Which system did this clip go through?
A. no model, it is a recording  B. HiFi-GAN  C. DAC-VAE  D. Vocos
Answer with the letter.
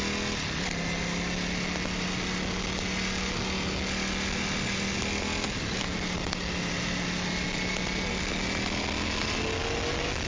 A